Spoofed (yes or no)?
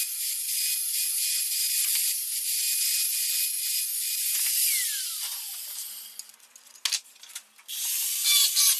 no